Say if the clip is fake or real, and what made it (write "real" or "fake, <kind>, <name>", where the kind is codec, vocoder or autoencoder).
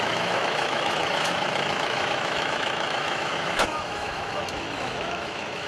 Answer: fake, autoencoder, DAC-VAE